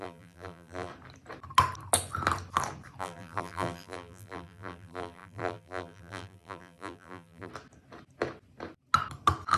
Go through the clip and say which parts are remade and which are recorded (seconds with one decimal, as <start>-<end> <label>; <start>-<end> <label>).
0.0-0.9 remade; 0.9-3.0 recorded; 3.0-7.5 remade; 7.5-9.6 recorded